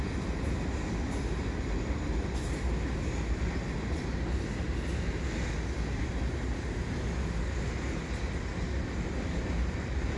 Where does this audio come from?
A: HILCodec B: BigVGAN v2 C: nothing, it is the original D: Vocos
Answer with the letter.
C